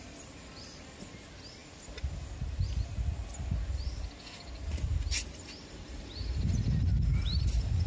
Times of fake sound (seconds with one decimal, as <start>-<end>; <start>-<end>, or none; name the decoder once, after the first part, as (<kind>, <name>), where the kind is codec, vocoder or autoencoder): none